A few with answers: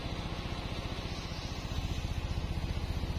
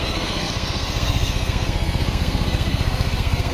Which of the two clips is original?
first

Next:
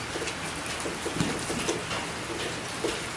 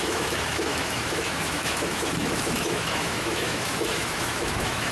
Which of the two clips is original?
first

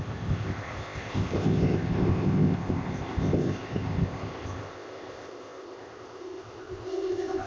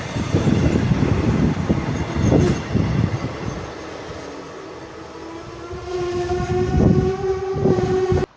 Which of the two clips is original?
second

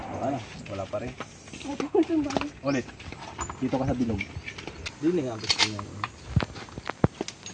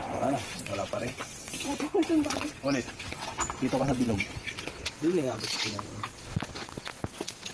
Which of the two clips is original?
first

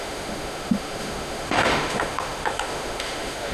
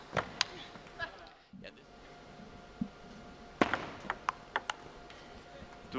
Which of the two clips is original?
second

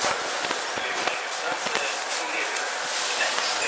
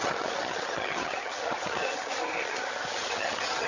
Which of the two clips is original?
first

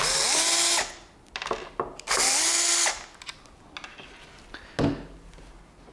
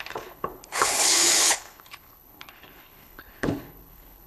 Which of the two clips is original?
first